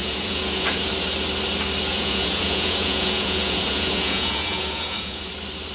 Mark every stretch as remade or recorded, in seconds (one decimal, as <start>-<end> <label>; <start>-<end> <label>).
0.0-0.9 remade; 0.9-1.9 recorded; 1.9-5.3 remade; 5.3-5.7 recorded